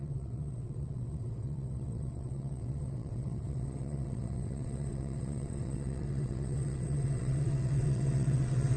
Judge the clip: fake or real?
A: fake